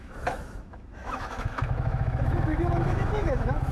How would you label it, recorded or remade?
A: remade